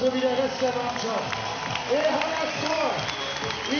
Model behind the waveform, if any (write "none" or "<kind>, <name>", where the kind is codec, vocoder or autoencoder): none